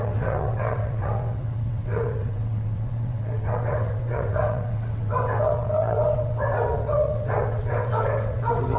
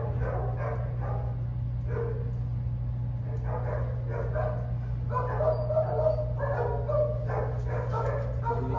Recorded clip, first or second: second